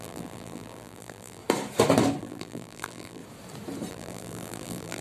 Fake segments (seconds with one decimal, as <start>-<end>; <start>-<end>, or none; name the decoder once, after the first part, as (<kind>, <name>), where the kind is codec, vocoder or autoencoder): 0.0-1.4 (vocoder, BigVGAN v2); 2.2-3.2; 3.9-5.0